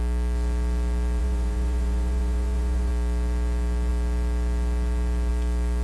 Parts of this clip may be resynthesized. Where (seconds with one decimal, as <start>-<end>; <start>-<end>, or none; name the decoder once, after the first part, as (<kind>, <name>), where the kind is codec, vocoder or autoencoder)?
1.2-2.9 (vocoder, Vocos)